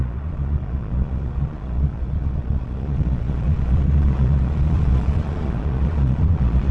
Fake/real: fake